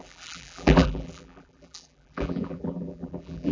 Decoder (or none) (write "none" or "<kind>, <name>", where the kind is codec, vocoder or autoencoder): vocoder, BigVGAN v2